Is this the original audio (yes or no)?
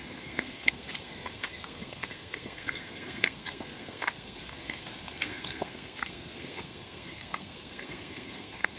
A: no